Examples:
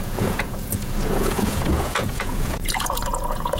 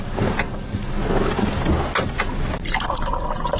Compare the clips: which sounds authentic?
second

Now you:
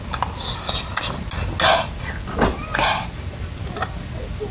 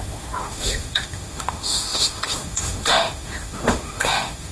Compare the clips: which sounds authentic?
first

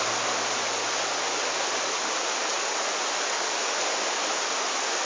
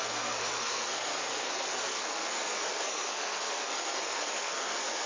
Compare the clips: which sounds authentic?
first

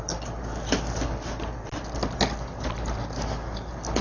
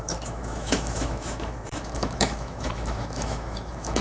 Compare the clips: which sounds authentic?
first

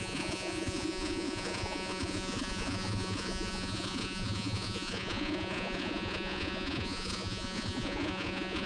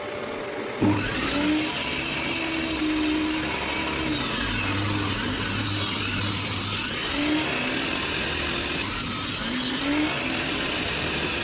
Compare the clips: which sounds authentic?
second